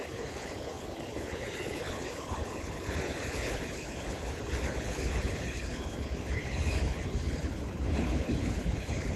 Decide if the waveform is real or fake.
fake